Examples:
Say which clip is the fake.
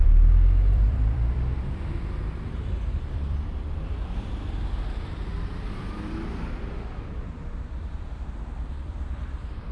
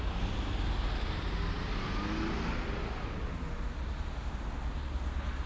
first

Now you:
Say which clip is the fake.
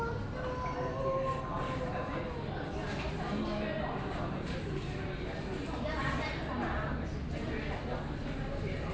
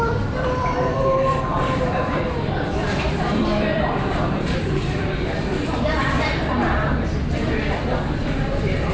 second